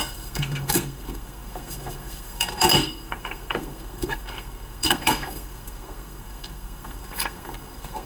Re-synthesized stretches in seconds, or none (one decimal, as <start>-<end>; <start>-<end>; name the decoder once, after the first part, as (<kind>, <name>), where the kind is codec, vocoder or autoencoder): 0.0-8.1 (codec, SNAC)